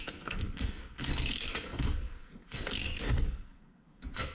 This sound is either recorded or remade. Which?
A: remade